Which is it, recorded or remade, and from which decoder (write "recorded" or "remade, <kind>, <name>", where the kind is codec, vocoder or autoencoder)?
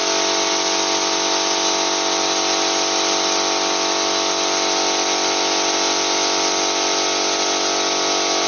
recorded